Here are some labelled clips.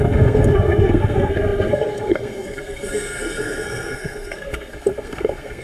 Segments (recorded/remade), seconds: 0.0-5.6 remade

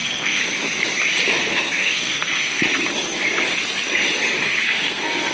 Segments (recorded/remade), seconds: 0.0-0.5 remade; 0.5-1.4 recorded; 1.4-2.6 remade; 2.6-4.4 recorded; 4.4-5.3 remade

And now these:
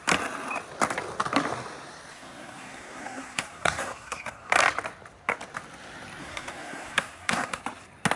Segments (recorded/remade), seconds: 0.0-2.1 recorded; 2.1-4.5 remade; 4.5-6.2 recorded; 6.2-7.6 remade; 7.6-8.2 recorded